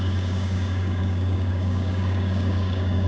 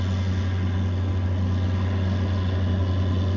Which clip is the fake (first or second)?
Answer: first